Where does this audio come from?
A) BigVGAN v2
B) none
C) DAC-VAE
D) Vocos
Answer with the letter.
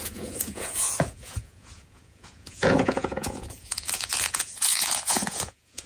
D